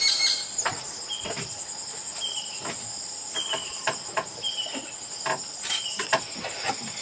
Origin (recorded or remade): recorded